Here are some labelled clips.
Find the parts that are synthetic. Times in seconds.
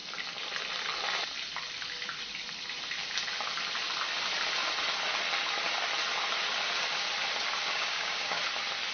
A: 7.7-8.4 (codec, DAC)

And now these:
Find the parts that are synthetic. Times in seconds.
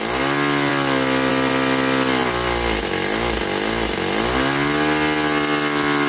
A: none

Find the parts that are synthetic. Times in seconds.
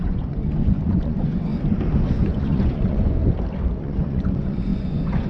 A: 0.0-1.5 (vocoder, Vocos); 2.1-3.2; 3.8-5.3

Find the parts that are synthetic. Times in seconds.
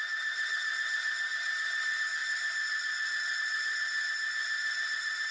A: none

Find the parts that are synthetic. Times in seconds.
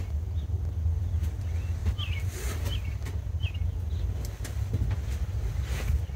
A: none